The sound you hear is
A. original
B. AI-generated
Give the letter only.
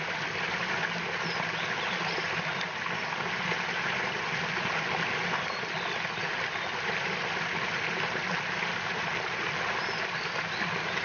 A